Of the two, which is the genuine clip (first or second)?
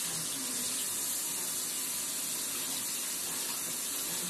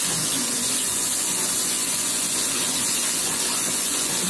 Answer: first